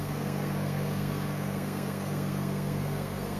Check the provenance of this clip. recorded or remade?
remade